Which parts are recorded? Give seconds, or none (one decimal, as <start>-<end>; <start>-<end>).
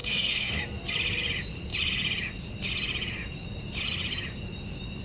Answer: 0.6-5.0